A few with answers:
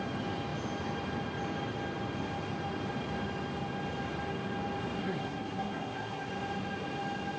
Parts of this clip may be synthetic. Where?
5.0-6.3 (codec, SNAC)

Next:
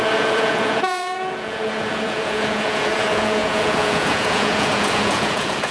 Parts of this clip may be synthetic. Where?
0.0-5.7 (vocoder, Vocos)

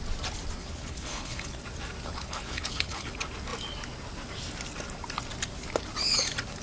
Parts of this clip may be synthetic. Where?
0.6-1.6 (codec, HILCodec); 2.1-3.1

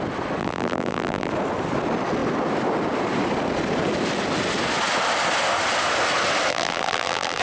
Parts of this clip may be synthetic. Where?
0.4-1.3 (vocoder, BigVGAN v2); 6.5-7.4

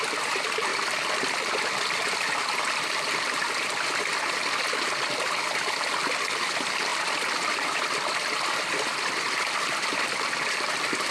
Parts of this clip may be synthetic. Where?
0.0-0.7 (vocoder, BigVGAN v2); 1.5-4.1; 5.5-6.9; 7.6-11.1

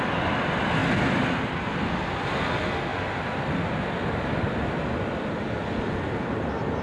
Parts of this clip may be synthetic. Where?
none

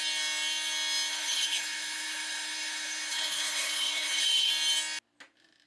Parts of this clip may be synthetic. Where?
1.1-4.5 (codec, HILCodec)